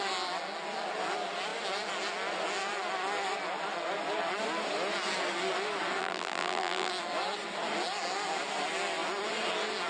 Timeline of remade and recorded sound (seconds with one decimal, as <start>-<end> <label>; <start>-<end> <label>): 0.0-6.0 recorded; 6.0-6.9 remade; 6.9-9.9 recorded